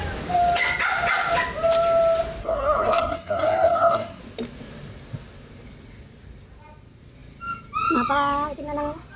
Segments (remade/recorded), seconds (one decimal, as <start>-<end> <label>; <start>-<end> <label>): 0.0-2.4 recorded; 2.4-4.2 remade; 4.2-9.2 recorded